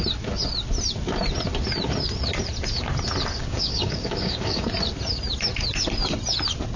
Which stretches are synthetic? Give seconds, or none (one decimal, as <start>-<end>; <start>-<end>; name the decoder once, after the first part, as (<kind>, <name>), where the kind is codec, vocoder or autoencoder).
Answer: 3.4-4.7 (codec, DAC)